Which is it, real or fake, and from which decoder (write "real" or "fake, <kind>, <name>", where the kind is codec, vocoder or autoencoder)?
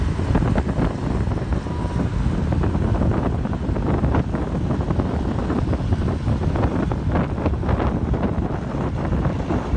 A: real